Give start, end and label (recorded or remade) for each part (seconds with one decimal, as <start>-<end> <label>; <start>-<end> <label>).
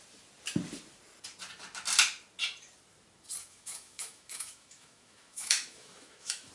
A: 0.0-3.4 recorded; 3.4-6.5 remade